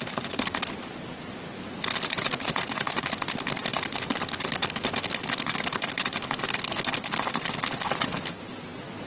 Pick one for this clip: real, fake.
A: real